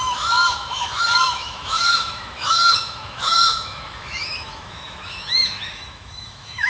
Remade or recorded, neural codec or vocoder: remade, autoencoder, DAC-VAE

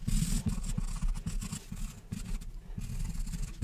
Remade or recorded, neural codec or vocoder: recorded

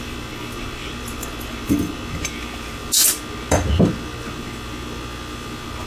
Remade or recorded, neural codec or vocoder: recorded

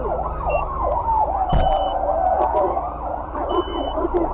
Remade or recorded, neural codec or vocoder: remade, vocoder, BigVGAN v2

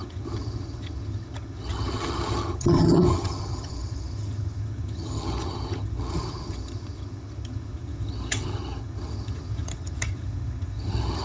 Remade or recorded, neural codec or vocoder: remade, vocoder, HiFi-GAN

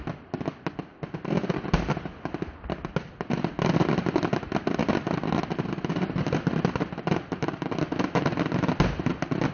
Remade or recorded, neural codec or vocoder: recorded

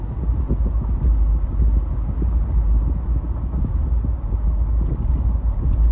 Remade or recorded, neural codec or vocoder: recorded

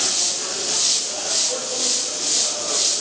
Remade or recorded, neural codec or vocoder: recorded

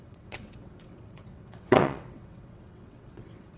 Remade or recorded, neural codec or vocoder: remade, vocoder, WaveNeXt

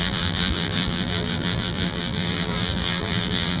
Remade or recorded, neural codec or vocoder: remade, vocoder, BigVGAN v2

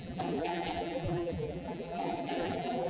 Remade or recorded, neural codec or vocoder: remade, vocoder, BigVGAN v2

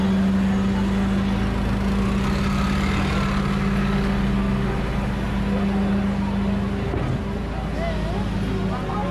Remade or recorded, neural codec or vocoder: recorded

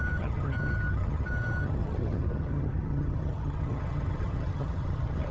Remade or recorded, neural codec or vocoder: remade, vocoder, HiFi-GAN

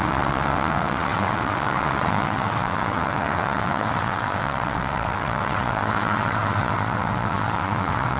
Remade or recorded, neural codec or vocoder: remade, vocoder, WaveNeXt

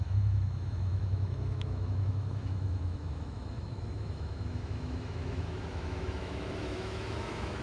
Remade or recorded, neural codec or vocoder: remade, autoencoder, DAC-VAE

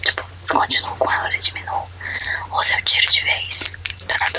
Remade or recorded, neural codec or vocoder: recorded